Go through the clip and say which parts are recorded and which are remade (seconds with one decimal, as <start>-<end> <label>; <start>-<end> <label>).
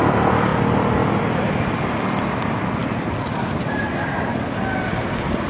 0.0-5.5 recorded